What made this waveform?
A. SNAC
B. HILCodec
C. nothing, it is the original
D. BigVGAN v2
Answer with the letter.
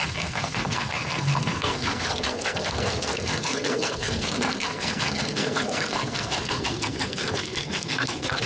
A